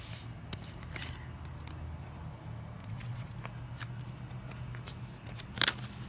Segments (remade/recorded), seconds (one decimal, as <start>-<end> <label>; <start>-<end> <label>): 0.0-2.8 recorded; 2.8-3.3 remade; 3.3-6.1 recorded